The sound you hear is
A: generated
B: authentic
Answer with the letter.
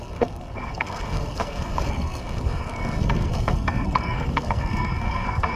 A